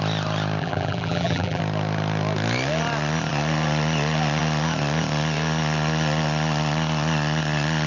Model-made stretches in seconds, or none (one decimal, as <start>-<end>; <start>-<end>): 0.6-1.6